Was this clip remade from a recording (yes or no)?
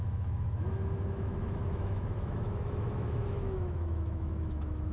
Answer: yes